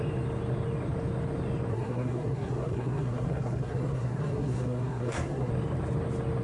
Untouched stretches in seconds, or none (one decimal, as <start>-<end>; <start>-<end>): 0.0-1.7; 5.5-6.4